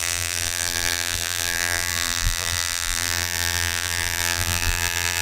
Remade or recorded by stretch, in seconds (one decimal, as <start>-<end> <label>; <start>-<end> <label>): 0.0-5.2 remade